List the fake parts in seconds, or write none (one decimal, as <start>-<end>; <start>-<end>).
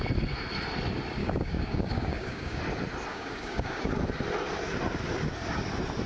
1.2-2.6; 3.1-3.9